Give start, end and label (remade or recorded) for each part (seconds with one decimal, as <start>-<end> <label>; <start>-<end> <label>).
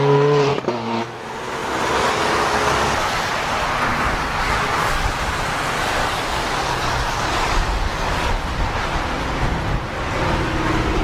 0.0-0.5 recorded; 0.5-1.2 remade; 1.2-3.9 recorded; 3.9-5.1 remade; 5.1-6.0 recorded; 6.0-8.3 remade; 8.3-11.0 recorded